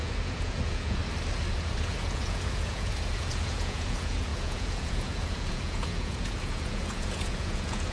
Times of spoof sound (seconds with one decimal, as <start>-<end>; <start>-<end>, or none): 0.0-1.0; 1.5-7.9